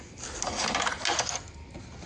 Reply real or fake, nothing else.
real